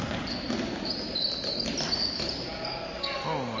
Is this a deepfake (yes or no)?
no